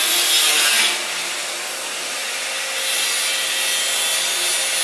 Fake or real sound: real